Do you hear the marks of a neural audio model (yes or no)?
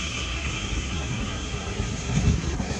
yes